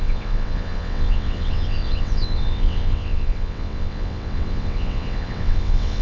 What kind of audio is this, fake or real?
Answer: fake